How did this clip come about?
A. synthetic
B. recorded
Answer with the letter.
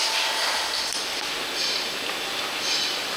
B